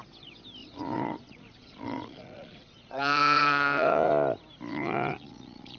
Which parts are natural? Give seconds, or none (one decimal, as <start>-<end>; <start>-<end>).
0.0-0.6; 4.1-4.7